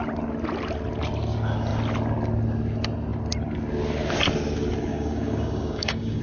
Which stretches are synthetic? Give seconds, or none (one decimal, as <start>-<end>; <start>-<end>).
4.9-6.2